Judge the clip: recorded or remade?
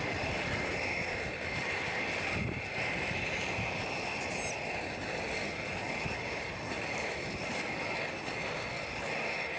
recorded